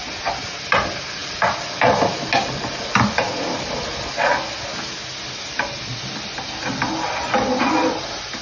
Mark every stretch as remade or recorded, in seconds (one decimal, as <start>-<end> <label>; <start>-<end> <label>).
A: 0.0-8.4 recorded